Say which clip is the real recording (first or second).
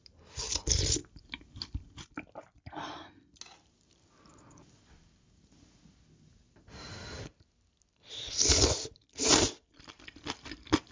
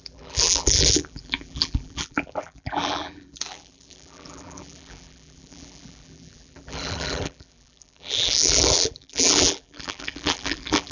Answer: first